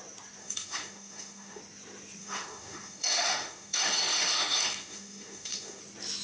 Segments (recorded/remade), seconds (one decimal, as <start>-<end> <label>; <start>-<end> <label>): 0.0-0.4 recorded; 0.4-1.6 remade; 1.6-2.2 recorded; 2.2-5.8 remade; 5.8-6.2 recorded